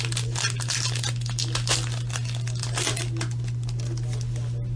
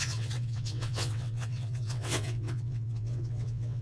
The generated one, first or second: second